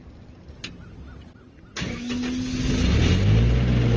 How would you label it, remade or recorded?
recorded